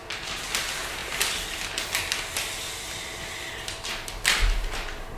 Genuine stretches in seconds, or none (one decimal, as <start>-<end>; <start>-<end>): 0.0-5.2

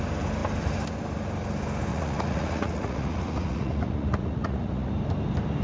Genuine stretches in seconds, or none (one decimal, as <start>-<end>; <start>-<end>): 0.0-1.9; 4.9-5.6

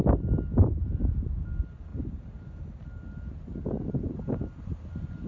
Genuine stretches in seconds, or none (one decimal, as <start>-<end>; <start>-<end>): 0.0-5.3

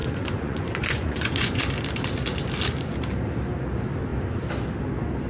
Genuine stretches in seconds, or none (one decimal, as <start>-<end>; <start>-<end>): 1.6-5.3

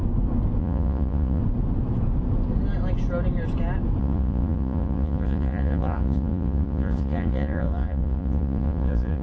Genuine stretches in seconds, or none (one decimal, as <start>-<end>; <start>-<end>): 0.0-0.6; 1.4-4.0

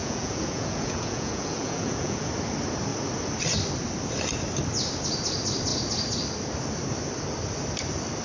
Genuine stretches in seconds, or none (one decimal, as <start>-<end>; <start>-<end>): 2.3-8.2